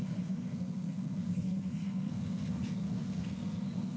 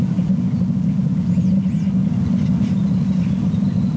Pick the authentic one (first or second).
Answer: second